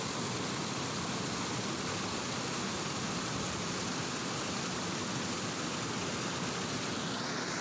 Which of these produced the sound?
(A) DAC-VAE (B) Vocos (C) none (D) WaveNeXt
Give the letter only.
C